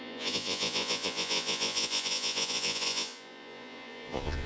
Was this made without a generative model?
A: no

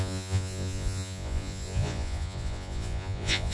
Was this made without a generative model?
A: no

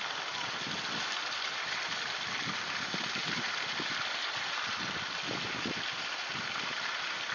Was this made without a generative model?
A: yes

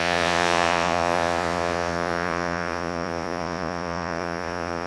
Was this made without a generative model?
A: no